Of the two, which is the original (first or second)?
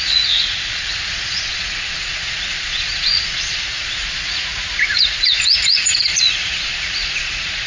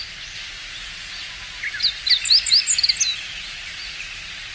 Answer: second